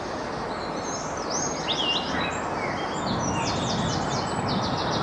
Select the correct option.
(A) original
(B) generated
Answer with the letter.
A